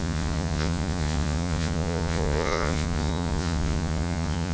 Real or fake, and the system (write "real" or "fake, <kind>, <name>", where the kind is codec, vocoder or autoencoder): fake, vocoder, Vocos